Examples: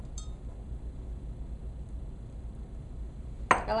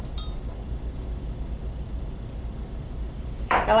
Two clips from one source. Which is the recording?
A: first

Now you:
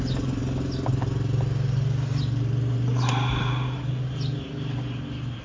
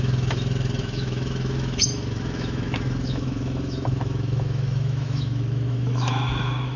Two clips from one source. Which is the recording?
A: first